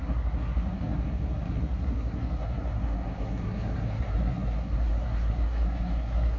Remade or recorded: remade